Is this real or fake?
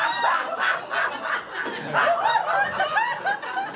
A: real